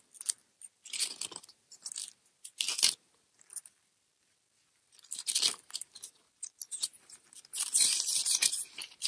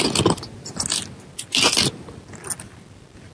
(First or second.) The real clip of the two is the second